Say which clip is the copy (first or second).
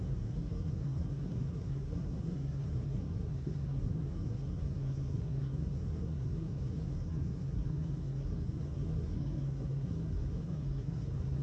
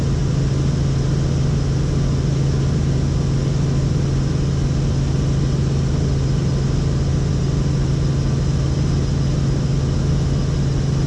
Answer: first